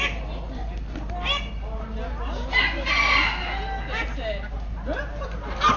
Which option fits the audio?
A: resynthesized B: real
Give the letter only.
B